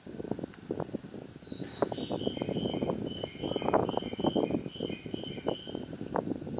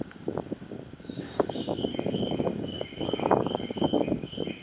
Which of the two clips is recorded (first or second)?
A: first